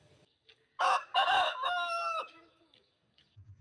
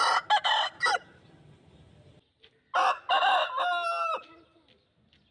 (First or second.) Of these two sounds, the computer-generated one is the first